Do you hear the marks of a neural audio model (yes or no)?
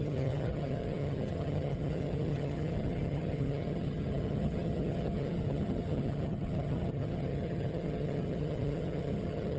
yes